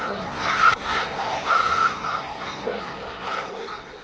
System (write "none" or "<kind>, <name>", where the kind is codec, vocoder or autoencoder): codec, SNAC